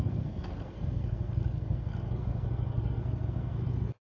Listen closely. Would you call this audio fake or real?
fake